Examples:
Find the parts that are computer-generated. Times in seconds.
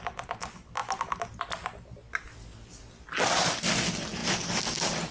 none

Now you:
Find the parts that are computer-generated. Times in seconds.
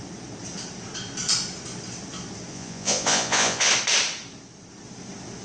2.5-3.7 (vocoder, Vocos)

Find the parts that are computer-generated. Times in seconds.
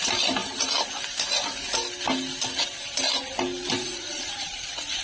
3.8-5.0 (vocoder, Vocos)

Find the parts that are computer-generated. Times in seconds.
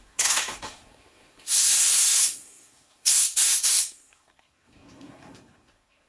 0.0-6.1 (codec, SNAC)